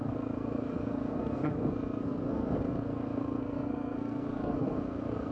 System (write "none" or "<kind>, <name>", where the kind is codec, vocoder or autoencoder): codec, SNAC